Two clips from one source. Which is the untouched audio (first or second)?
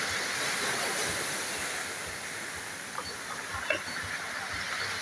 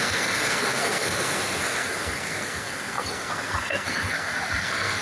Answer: first